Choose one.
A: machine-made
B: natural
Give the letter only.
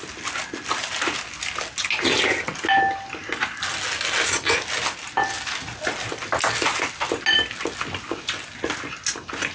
B